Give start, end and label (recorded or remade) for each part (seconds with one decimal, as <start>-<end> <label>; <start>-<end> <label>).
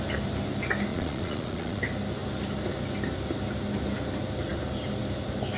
0.0-0.9 recorded; 0.9-1.8 remade; 1.8-5.6 recorded